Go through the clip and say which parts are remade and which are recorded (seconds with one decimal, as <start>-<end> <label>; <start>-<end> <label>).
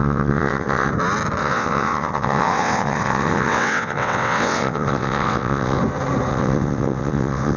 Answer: 0.0-0.9 remade; 0.9-1.4 recorded; 1.4-5.8 remade; 5.8-6.3 recorded; 6.3-7.6 remade